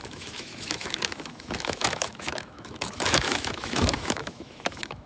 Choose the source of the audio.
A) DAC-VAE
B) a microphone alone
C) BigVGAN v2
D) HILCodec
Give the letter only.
A